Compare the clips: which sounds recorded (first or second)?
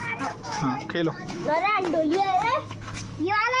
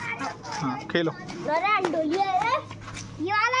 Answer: second